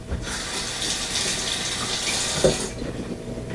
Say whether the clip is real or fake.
real